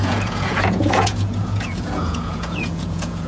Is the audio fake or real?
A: fake